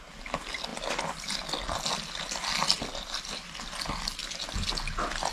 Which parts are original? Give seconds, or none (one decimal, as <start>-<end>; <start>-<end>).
0.0-2.9; 3.8-5.3

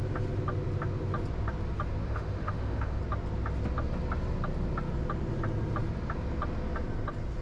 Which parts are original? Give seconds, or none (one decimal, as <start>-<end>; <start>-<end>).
0.0-2.0; 3.0-7.4

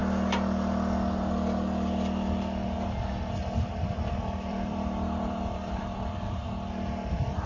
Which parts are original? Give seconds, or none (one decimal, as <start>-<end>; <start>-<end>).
0.0-4.5; 6.4-7.1

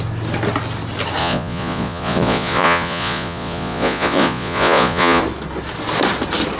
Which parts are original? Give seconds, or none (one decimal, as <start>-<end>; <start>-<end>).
0.0-1.2; 5.2-6.6